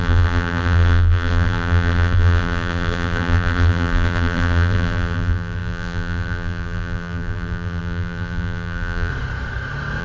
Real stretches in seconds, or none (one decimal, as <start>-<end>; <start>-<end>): 9.1-10.0